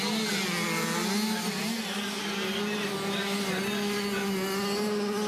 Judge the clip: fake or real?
real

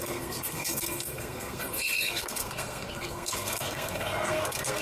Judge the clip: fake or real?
fake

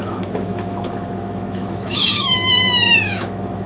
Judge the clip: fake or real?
fake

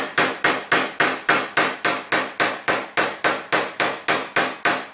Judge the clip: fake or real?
real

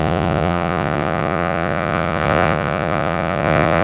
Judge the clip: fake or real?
fake